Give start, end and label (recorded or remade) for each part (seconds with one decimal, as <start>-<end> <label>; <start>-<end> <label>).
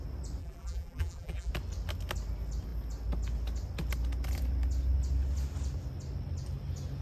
0.0-0.4 recorded; 0.4-1.5 remade; 1.5-7.0 recorded